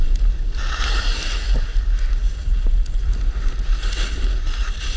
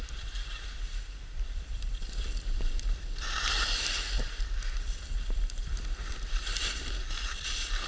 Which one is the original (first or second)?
first